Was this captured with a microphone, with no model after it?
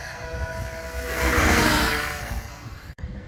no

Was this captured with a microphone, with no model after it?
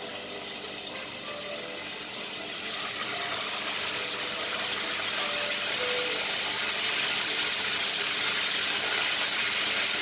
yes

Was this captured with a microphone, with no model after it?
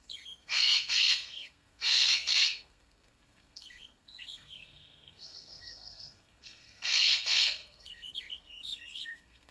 no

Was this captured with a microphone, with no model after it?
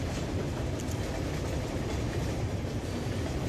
yes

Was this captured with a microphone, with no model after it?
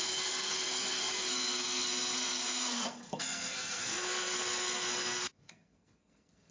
no